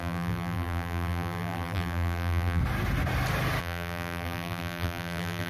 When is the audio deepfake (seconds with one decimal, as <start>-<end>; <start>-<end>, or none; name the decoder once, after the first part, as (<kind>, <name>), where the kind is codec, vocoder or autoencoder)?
0.0-2.6 (vocoder, BigVGAN v2); 3.6-5.5